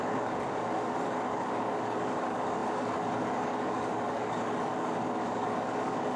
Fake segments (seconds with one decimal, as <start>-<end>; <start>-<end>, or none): 0.0-6.2